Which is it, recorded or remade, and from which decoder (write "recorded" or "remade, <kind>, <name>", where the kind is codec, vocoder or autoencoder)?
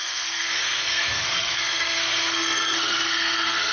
remade, codec, SNAC